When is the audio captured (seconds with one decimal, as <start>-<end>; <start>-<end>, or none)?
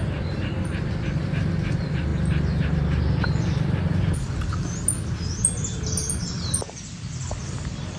0.0-8.0